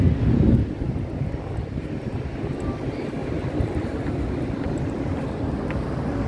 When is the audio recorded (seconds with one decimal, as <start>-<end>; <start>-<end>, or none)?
0.0-6.3